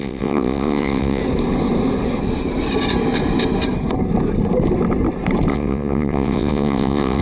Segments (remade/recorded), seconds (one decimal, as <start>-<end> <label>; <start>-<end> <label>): 0.0-1.2 remade; 1.2-5.5 recorded; 5.5-7.2 remade